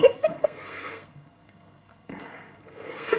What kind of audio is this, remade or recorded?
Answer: remade